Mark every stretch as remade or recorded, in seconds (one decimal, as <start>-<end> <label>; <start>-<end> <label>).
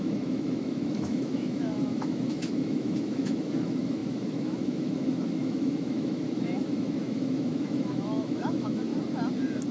0.0-8.9 remade; 8.9-9.7 recorded